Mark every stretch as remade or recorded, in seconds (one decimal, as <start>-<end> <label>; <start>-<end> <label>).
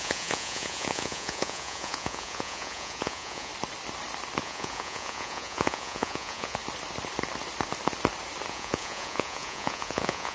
0.0-3.5 remade; 3.5-4.4 recorded; 4.4-6.6 remade; 6.6-8.5 recorded; 8.5-10.3 remade